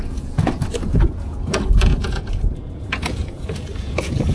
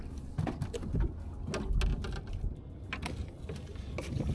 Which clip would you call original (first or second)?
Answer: second